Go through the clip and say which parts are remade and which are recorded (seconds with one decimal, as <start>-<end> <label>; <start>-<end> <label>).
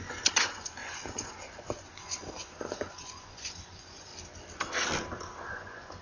0.0-4.1 remade; 4.1-5.5 recorded; 5.5-6.0 remade